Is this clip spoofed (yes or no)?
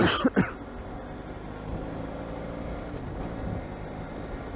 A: no